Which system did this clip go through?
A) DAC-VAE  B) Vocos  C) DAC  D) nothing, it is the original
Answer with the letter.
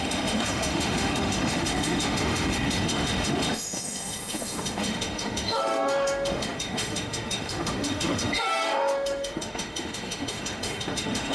A